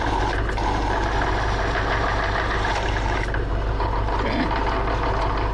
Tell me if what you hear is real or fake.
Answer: fake